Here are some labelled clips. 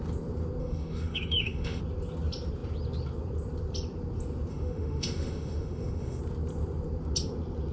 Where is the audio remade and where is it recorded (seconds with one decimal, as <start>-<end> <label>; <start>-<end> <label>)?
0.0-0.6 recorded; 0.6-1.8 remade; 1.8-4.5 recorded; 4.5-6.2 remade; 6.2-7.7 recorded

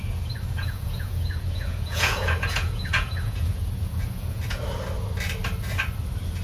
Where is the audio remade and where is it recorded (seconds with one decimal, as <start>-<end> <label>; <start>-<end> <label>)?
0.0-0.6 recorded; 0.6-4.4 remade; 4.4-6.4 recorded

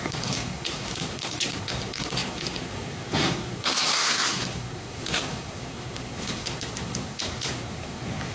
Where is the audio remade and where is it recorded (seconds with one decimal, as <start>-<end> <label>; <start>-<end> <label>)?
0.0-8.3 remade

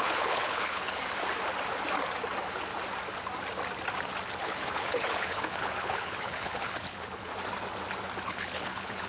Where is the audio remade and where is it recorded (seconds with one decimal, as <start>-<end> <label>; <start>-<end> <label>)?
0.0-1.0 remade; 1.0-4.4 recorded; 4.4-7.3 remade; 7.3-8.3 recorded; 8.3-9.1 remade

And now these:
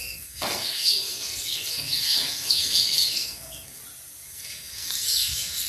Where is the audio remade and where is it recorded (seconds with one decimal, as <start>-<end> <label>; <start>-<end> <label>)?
0.0-3.8 remade; 3.8-4.3 recorded; 4.3-5.7 remade